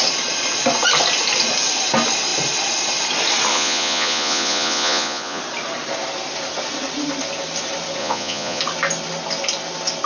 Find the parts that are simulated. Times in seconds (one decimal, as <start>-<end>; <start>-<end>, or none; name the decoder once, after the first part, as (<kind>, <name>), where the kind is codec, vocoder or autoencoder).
3.5-5.4 (vocoder, Vocos); 8.0-8.6